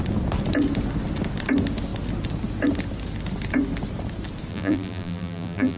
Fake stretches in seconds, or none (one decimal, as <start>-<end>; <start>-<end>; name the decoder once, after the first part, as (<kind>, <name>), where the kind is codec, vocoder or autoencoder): 4.5-5.8 (vocoder, BigVGAN v2)